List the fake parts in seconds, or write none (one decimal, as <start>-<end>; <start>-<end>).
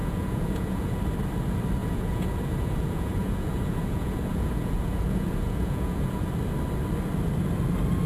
0.0-1.0; 1.8-6.3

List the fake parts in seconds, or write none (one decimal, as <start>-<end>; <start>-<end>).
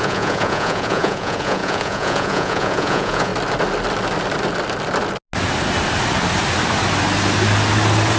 0.0-3.3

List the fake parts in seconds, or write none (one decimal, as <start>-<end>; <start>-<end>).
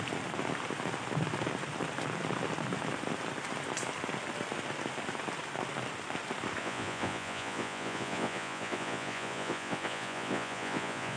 6.6-11.2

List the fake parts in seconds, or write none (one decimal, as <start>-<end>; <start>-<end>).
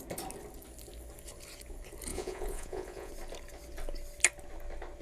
2.1-3.1